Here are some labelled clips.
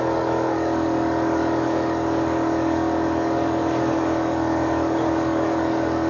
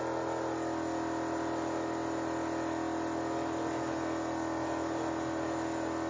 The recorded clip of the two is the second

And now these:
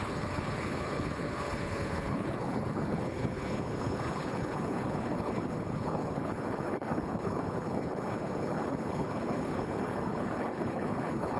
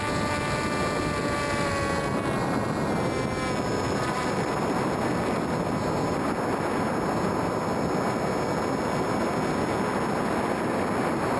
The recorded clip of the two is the second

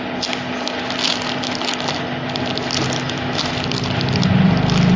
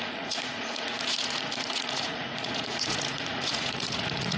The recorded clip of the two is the first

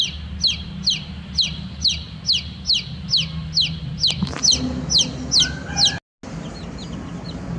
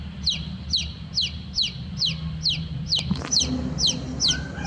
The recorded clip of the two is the first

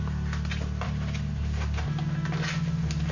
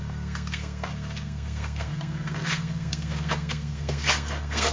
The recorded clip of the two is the first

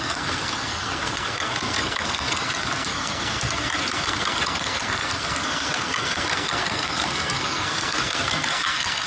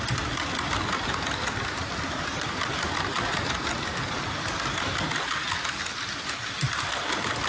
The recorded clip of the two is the second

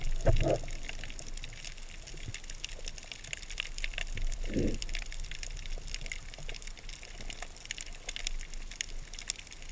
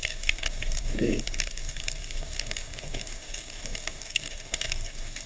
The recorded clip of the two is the first